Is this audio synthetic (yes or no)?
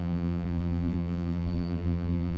yes